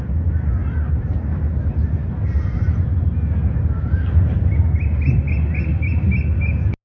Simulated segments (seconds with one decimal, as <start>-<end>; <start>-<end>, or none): 0.6-4.7